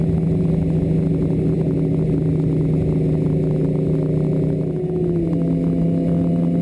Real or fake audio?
real